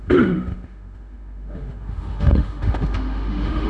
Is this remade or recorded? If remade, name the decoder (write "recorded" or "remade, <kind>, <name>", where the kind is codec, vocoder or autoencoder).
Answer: remade, autoencoder, DAC-VAE